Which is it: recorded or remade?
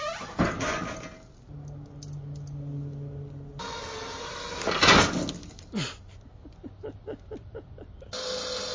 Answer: recorded